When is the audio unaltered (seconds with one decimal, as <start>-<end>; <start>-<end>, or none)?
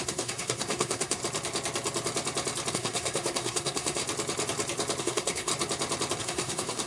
1.2-2.7; 4.0-5.0; 5.5-6.2